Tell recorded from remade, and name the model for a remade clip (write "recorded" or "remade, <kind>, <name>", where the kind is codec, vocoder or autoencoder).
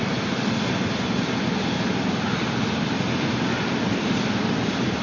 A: recorded